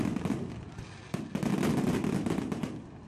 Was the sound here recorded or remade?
recorded